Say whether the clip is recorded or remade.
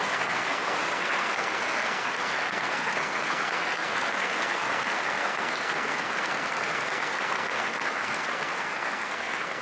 remade